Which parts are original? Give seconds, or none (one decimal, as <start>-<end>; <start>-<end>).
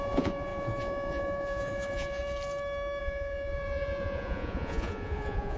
2.2-3.0